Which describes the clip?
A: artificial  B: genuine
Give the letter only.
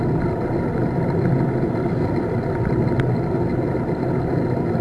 B